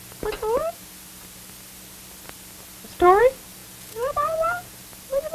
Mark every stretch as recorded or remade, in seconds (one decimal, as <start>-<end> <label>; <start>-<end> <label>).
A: 0.0-3.6 recorded; 3.6-4.8 remade; 4.8-5.3 recorded